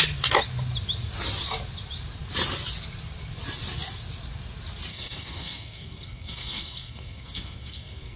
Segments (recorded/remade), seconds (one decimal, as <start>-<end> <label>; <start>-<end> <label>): 0.0-4.9 recorded; 4.9-8.2 remade